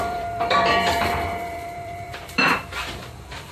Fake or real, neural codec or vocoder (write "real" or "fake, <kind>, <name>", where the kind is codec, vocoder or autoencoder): fake, vocoder, BigVGAN v2